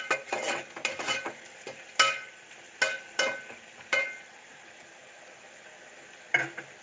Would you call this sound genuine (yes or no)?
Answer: yes